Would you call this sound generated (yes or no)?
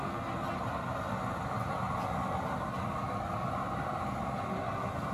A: no